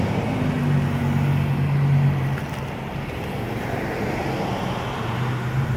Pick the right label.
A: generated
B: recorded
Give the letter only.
B